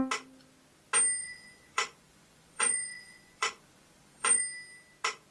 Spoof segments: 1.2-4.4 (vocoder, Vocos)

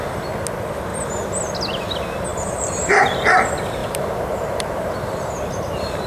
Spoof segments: 2.3-3.2 (vocoder, BigVGAN v2); 3.8-6.1

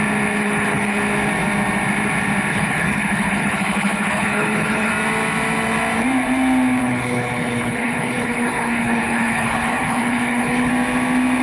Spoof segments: 0.4-1.0 (codec, HILCodec); 2.5-4.9; 6.8-10.7

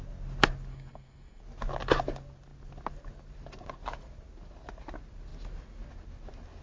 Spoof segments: 0.7-1.4 (codec, DAC)

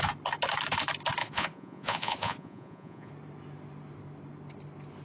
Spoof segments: 1.2-3.1 (vocoder, Vocos)